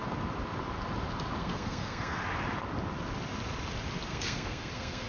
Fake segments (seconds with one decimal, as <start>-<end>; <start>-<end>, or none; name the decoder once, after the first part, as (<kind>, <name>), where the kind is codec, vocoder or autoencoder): 1.4-2.2 (codec, SNAC); 4.1-5.1